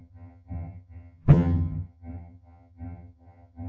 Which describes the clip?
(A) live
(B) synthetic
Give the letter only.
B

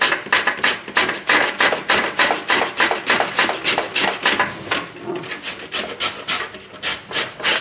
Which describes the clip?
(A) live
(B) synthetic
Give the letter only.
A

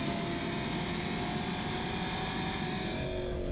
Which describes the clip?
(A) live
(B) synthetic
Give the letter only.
A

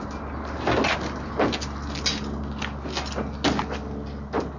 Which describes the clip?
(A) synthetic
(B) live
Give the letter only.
B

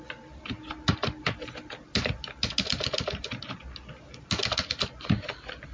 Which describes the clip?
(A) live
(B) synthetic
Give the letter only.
A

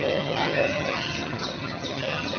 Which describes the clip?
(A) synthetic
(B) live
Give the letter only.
A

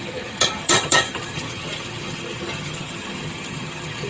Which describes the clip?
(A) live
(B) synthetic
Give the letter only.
B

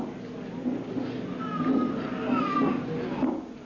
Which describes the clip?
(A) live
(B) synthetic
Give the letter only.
A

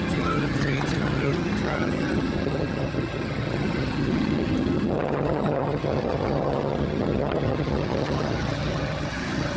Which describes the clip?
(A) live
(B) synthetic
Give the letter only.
B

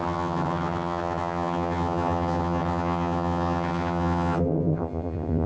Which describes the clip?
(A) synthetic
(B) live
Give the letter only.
A